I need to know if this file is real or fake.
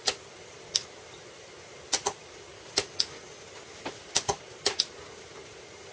real